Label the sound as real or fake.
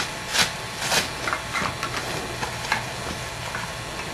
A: real